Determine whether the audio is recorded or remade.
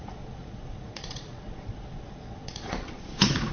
remade